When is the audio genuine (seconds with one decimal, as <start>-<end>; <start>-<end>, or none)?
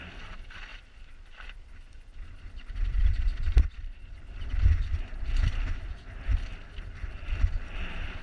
0.0-0.7; 2.5-2.9; 6.5-8.2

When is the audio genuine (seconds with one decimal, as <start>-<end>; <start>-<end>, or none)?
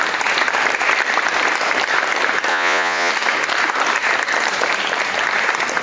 0.0-2.5; 3.1-5.8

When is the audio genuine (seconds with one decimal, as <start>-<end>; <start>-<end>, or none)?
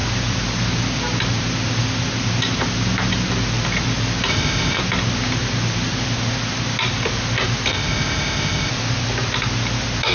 0.0-4.3; 4.8-7.7; 8.7-10.1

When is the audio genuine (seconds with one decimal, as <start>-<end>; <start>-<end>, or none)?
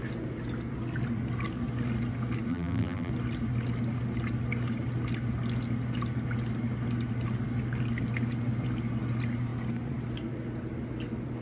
0.0-2.5; 3.1-11.4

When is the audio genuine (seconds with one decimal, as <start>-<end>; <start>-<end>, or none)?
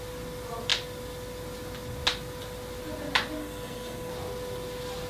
0.0-3.4; 4.1-5.1